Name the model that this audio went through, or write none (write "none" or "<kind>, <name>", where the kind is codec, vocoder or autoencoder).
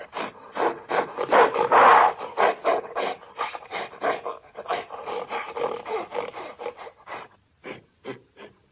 vocoder, BigVGAN v2